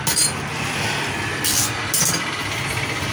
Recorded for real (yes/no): yes